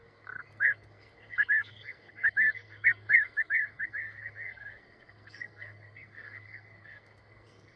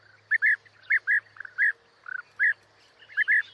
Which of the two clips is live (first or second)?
second